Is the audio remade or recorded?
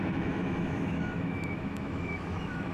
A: remade